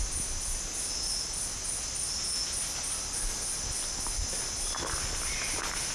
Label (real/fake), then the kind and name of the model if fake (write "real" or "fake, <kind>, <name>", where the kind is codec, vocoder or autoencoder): real